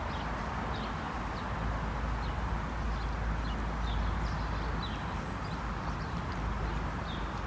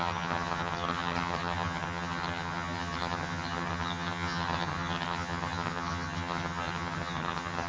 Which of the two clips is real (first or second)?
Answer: first